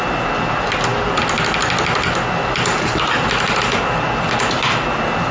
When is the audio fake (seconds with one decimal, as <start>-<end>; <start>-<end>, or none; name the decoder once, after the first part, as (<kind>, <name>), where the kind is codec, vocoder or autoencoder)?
none